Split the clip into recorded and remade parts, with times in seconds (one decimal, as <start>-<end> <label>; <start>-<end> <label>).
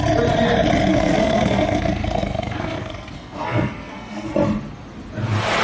0.0-0.9 recorded; 0.9-4.3 remade; 4.3-5.6 recorded